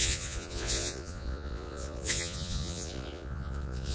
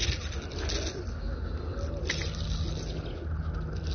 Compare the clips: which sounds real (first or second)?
second